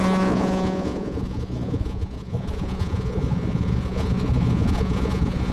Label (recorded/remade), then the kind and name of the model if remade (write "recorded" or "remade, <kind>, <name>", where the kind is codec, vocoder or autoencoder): remade, vocoder, Vocos